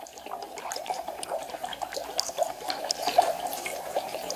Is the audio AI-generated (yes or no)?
yes